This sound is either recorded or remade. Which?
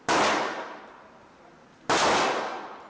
recorded